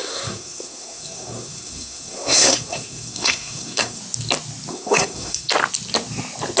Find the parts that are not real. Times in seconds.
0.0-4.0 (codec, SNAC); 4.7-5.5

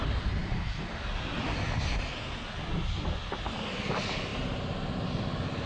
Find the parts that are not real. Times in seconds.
none

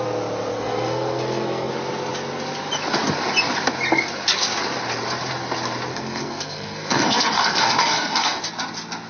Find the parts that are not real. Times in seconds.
0.5-1.7 (codec, SNAC); 5.9-8.4

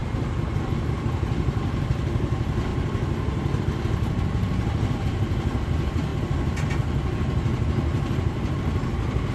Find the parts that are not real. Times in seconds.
none

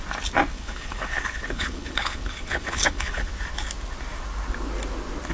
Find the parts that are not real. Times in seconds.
0.5-3.3 (codec, HILCodec)

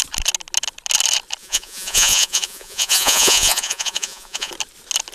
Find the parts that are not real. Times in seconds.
1.4-4.5 (vocoder, Vocos)

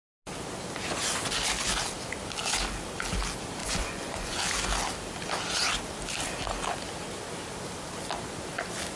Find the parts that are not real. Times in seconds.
3.6-4.4 (vocoder, Vocos)

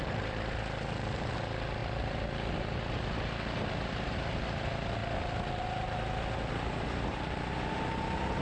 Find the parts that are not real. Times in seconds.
0.0-5.0 (vocoder, BigVGAN v2); 5.8-8.4